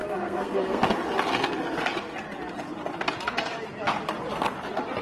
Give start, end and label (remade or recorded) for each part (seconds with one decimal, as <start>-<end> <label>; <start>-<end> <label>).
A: 0.0-0.8 remade; 0.8-5.0 recorded